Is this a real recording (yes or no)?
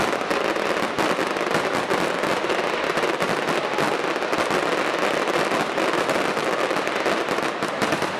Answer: yes